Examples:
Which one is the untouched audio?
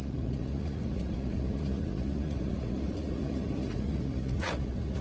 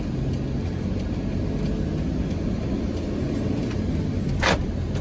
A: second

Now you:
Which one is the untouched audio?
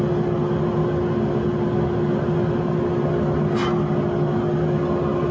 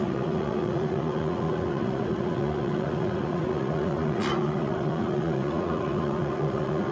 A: first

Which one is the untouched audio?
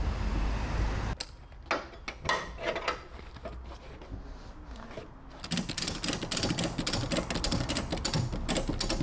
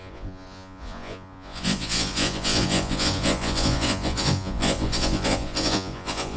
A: first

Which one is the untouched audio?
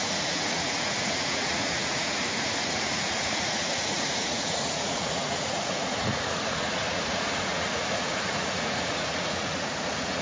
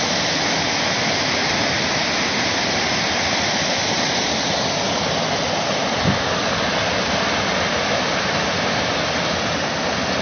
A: second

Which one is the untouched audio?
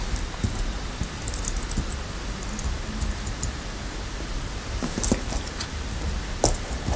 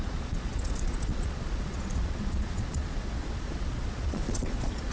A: first